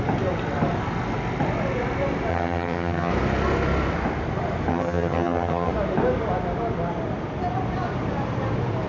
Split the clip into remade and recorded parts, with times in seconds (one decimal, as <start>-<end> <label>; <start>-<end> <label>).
0.0-2.3 recorded; 2.3-3.1 remade; 3.1-4.7 recorded; 4.7-5.7 remade; 5.7-8.9 recorded